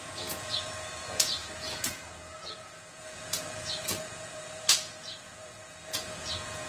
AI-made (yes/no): yes